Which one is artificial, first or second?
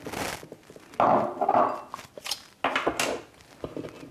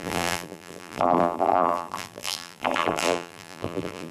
second